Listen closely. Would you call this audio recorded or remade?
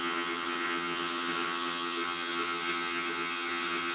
remade